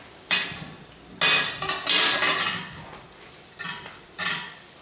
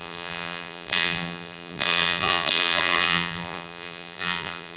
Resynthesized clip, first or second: second